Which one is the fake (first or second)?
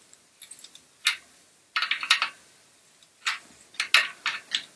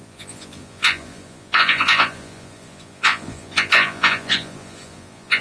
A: second